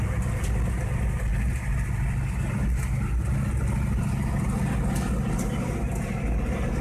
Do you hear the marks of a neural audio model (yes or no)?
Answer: no